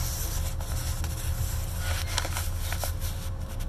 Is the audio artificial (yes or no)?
no